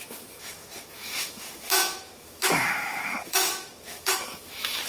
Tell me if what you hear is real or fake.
fake